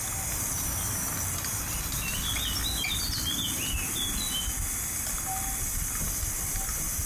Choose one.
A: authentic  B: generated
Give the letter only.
A